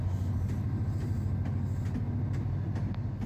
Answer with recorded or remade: recorded